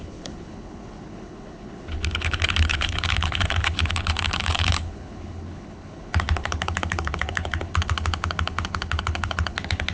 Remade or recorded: remade